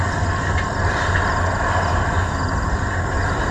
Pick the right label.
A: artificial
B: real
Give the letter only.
B